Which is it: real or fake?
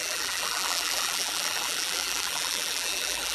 fake